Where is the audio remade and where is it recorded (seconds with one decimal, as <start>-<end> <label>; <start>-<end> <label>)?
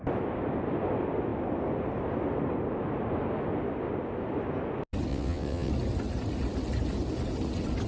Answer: 0.0-5.1 recorded; 5.1-5.7 remade; 5.7-7.9 recorded